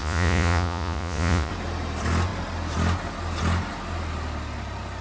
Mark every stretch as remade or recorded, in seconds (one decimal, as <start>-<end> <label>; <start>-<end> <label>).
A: 0.0-1.5 remade; 1.5-5.0 recorded